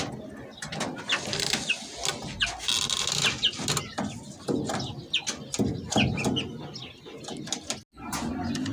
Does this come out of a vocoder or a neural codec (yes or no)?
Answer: no